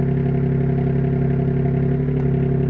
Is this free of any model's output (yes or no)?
yes